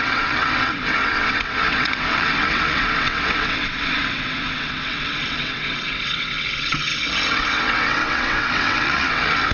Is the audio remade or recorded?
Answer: remade